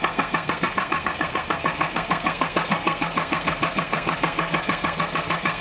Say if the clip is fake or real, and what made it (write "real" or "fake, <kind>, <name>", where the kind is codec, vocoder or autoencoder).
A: fake, codec, SNAC